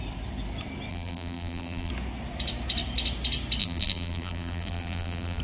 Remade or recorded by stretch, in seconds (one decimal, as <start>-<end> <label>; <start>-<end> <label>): 0.0-0.9 recorded; 0.9-1.9 remade; 1.9-3.6 recorded; 3.6-5.4 remade